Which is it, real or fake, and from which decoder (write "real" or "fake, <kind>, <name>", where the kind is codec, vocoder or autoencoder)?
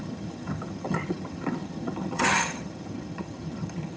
fake, vocoder, HiFi-GAN